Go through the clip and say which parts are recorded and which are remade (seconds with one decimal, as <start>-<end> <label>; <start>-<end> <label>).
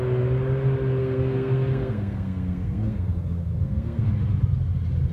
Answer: 0.0-1.0 recorded; 1.0-4.1 remade; 4.1-5.1 recorded